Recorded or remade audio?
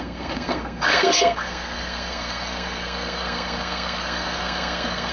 remade